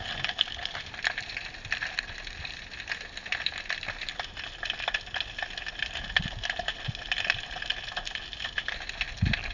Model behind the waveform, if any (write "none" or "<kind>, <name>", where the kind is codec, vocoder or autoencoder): none